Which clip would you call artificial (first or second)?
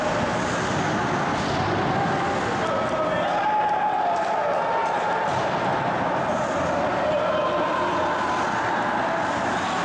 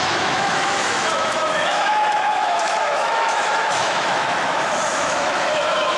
second